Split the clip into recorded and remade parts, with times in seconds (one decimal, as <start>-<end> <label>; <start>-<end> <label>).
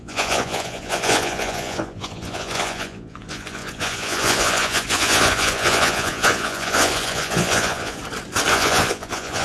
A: 0.0-8.0 remade; 8.0-8.5 recorded; 8.5-9.4 remade